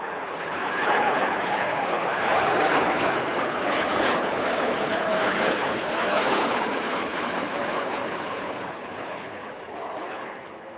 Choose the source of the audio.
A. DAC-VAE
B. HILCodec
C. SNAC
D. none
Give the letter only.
B